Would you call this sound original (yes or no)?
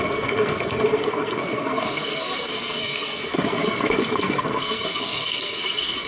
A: no